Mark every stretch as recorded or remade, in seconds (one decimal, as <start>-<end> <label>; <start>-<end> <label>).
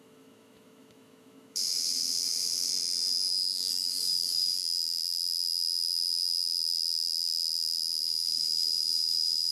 0.0-2.7 remade; 2.7-3.7 recorded; 3.7-4.6 remade; 4.6-8.0 recorded; 8.0-9.5 remade